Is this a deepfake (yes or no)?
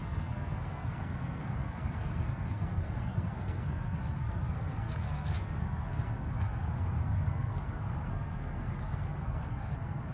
yes